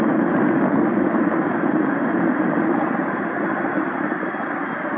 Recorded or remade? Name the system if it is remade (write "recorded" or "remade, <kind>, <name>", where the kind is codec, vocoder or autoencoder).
recorded